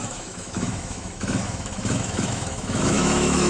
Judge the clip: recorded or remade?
remade